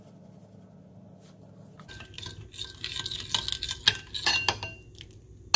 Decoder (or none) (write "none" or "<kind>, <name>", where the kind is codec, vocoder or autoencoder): none